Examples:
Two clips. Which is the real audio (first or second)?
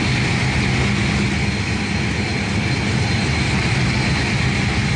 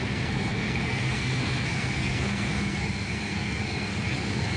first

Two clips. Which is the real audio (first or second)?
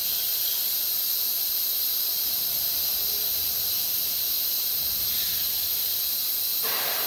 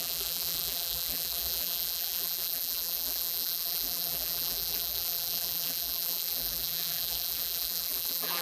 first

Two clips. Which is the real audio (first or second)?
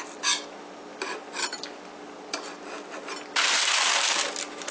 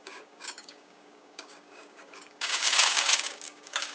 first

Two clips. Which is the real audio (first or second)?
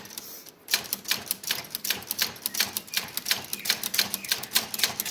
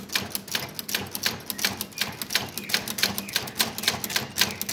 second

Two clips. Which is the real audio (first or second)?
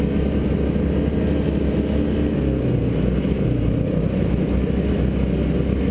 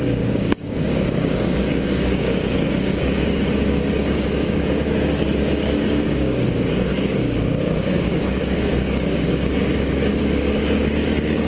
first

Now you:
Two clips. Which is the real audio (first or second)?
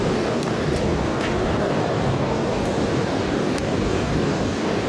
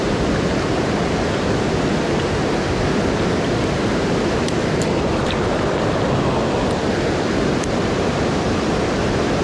second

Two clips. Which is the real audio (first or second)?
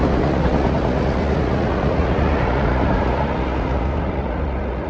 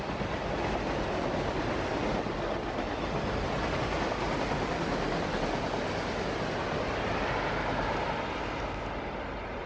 second